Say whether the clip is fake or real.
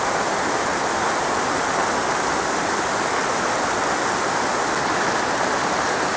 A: real